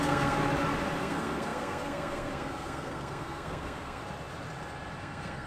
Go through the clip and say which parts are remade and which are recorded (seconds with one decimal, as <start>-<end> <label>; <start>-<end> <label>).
0.0-0.4 remade; 0.4-1.0 recorded; 1.0-4.0 remade; 4.0-5.0 recorded; 5.0-5.5 remade